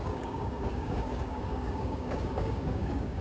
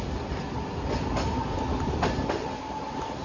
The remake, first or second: first